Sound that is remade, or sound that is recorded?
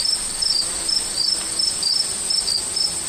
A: recorded